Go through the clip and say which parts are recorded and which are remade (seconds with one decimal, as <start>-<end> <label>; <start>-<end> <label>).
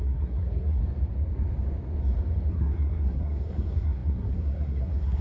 0.0-0.8 remade; 0.8-2.5 recorded; 2.5-5.2 remade